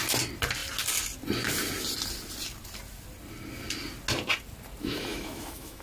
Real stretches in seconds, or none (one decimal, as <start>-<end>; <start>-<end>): 0.0-4.8